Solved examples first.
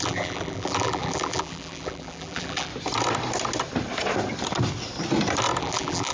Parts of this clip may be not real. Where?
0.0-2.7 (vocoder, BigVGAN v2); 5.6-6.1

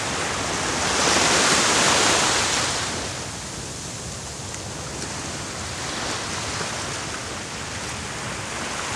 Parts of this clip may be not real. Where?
none

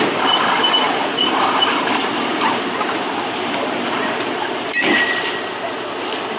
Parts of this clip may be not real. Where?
1.2-5.0 (vocoder, BigVGAN v2)